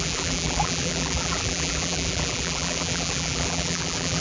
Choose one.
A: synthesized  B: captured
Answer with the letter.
A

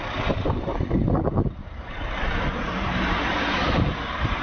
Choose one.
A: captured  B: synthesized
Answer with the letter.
B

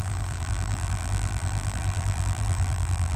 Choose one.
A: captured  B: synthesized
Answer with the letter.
B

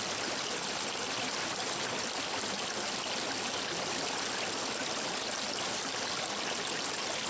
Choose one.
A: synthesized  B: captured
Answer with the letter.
B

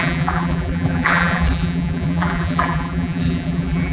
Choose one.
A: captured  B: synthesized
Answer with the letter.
B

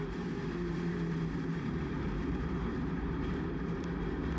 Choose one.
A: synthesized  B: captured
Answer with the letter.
A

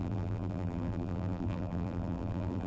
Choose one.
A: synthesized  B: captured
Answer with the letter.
A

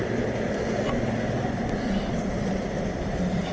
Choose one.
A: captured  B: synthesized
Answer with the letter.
B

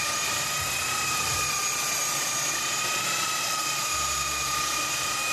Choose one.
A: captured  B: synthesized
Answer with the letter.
A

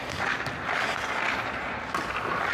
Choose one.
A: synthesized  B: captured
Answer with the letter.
B